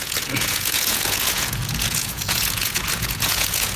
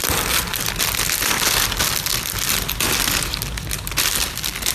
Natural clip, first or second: second